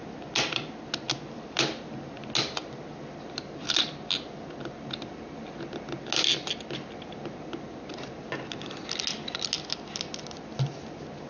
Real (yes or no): yes